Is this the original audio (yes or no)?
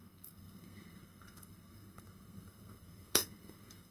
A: no